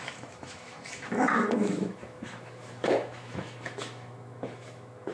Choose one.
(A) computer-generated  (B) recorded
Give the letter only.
A